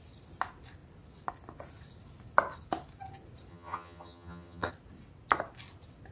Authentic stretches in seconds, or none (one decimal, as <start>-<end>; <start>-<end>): 0.0-3.5; 4.7-6.1

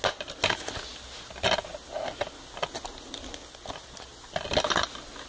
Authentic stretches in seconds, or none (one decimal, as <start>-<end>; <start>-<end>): 0.0-5.3

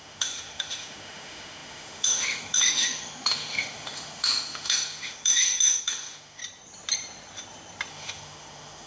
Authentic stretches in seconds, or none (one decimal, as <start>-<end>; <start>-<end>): 6.4-7.9

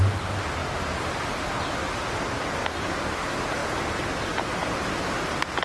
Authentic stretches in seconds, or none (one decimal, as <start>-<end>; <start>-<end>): 0.0-5.6